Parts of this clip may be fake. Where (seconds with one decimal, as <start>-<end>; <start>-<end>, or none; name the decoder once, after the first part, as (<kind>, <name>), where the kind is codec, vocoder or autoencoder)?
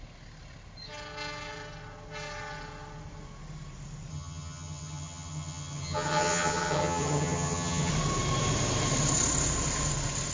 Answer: 4.1-7.9 (vocoder, HiFi-GAN)